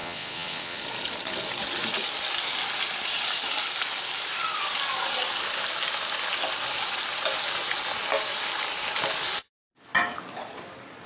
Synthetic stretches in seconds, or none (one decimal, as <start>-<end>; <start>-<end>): 0.0-0.8